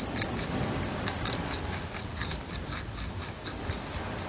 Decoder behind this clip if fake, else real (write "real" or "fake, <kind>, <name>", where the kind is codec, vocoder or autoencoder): real